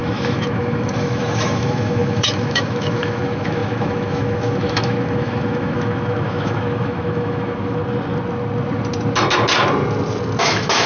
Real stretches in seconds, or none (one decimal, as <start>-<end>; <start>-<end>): 7.8-10.4